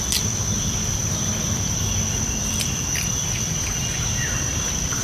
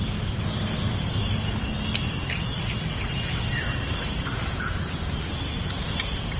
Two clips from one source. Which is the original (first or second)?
second